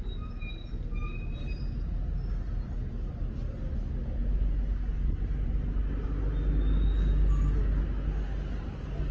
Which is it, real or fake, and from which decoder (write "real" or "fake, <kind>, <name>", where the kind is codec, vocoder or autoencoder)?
real